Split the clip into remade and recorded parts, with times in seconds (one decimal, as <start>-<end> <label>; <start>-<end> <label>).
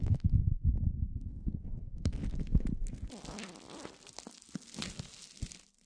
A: 0.0-2.2 remade; 2.2-5.9 recorded